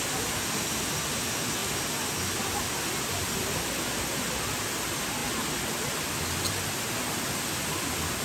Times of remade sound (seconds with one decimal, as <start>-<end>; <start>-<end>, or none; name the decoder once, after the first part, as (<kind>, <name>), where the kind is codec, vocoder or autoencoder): none